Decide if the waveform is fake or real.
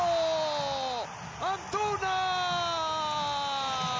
real